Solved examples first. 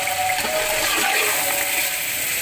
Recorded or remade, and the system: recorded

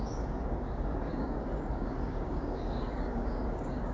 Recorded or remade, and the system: remade, codec, DAC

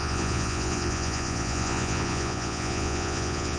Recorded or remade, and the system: remade, vocoder, Vocos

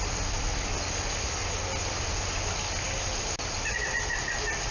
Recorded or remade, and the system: recorded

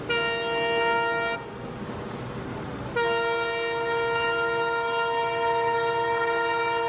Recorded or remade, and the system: recorded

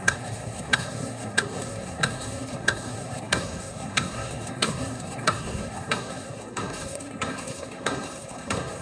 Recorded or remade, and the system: remade, codec, SNAC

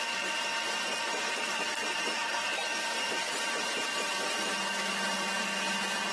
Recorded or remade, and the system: recorded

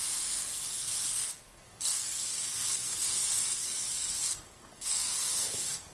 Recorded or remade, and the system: remade, codec, SNAC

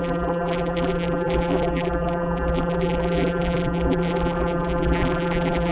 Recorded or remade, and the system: remade, vocoder, BigVGAN v2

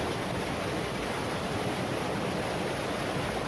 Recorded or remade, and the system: recorded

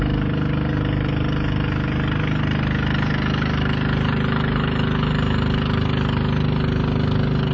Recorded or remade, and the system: recorded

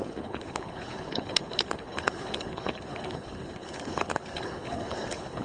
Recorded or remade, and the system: remade, codec, HILCodec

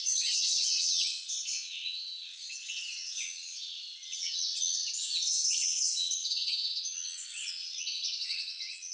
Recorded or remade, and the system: remade, vocoder, WaveNeXt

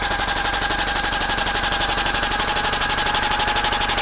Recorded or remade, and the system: recorded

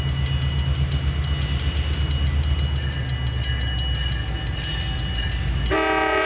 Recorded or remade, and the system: recorded